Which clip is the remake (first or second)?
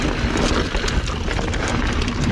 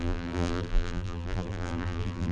second